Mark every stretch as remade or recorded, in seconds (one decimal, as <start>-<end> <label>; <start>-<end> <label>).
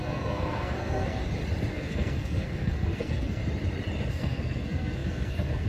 0.0-1.2 remade; 1.2-1.7 recorded; 1.7-3.4 remade; 3.4-4.1 recorded; 4.1-5.7 remade